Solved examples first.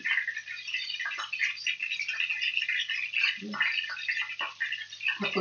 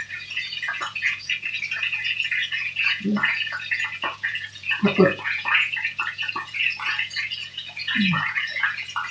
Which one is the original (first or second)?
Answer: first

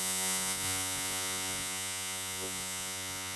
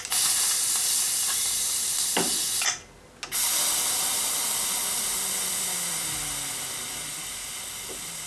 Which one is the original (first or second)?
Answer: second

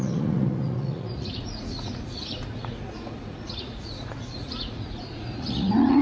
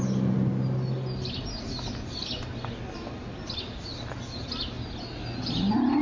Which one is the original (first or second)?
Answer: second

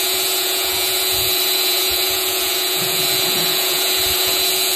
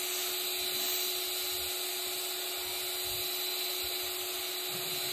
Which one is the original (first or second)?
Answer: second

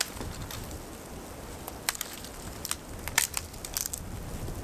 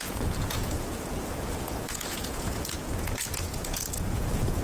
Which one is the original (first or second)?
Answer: first